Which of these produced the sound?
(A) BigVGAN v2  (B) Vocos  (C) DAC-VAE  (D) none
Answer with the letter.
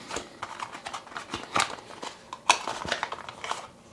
D